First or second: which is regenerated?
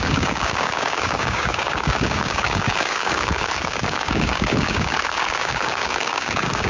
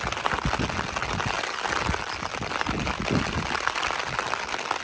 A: first